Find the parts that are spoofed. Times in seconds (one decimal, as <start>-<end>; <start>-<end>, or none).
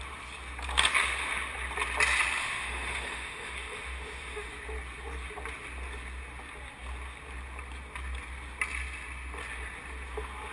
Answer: 2.4-4.5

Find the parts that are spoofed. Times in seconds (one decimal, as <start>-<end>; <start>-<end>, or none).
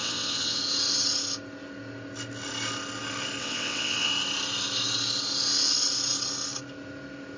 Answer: 0.0-0.6; 3.4-4.1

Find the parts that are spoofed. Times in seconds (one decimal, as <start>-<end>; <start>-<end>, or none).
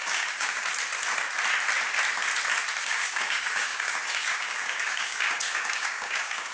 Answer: 0.0-0.7; 2.8-6.5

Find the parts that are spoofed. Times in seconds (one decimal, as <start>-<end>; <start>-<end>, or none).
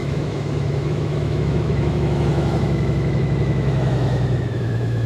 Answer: 0.0-5.1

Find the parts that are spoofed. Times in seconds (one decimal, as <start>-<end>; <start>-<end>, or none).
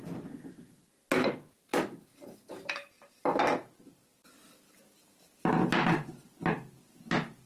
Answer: none